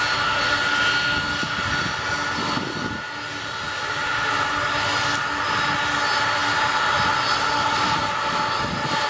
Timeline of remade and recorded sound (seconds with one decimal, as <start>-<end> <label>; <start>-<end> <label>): 0.0-9.1 recorded